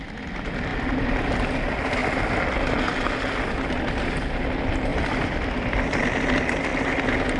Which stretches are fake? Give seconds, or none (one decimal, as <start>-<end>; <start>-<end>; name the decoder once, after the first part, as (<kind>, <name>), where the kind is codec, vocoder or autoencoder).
0.7-1.3 (vocoder, BigVGAN v2); 4.9-6.0